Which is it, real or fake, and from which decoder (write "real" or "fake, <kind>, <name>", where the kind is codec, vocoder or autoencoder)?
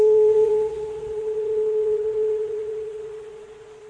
fake, vocoder, Vocos